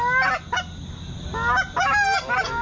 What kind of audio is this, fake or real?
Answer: real